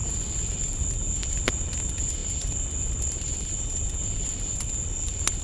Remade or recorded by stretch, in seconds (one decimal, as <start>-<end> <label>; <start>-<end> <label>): 0.0-5.4 recorded